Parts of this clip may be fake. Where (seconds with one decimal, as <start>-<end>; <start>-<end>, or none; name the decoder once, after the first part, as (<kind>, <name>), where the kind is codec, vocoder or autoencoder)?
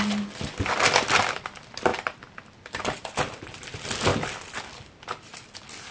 1.9-3.2 (vocoder, BigVGAN v2); 4.1-5.9